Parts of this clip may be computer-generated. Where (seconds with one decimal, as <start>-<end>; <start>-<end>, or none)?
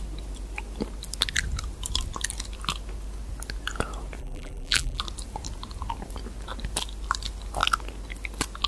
4.2-5.0